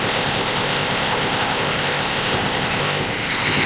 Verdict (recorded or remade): remade